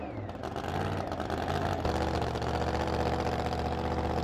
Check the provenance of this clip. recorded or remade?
recorded